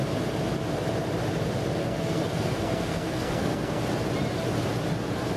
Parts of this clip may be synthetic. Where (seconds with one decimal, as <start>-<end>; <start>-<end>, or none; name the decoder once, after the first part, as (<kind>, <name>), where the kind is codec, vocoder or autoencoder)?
1.8-3.8 (codec, SNAC)